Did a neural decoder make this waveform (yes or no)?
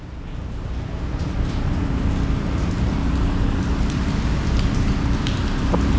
no